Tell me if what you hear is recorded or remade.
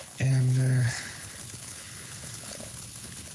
remade